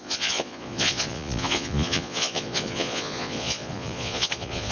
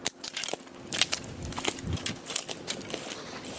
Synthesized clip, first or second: first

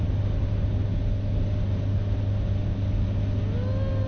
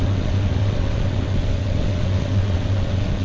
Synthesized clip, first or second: second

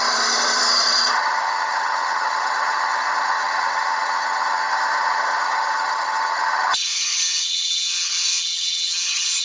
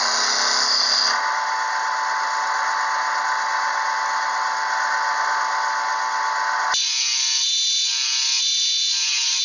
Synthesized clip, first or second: first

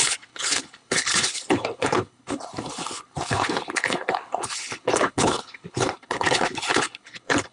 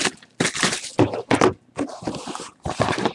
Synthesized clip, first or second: first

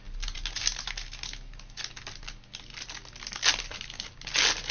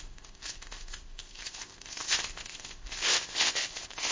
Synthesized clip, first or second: second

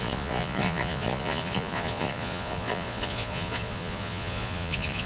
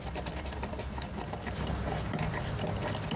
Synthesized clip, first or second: first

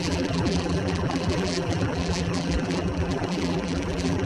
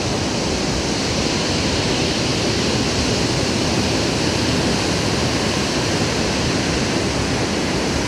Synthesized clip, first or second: first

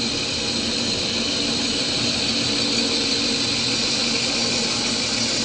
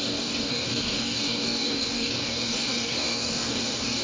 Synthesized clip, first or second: second